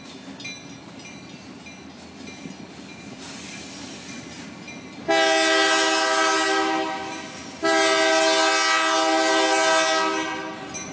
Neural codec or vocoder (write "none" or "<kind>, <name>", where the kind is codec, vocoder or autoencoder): none